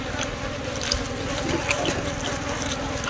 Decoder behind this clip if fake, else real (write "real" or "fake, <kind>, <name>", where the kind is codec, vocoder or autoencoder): real